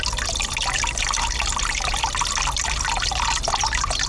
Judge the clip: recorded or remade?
recorded